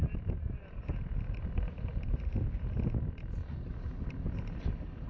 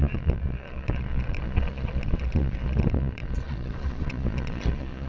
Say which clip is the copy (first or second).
second